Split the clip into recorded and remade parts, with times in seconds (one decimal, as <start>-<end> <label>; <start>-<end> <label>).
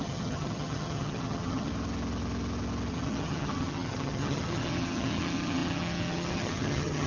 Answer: 0.0-1.7 remade; 1.7-2.9 recorded; 2.9-7.1 remade